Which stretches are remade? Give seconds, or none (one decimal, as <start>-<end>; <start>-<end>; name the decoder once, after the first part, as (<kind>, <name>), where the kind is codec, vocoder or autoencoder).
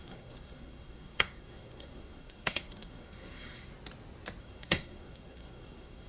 0.0-3.7 (codec, SNAC); 4.4-6.1